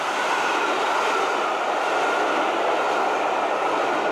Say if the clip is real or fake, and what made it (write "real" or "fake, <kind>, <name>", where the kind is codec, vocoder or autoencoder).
real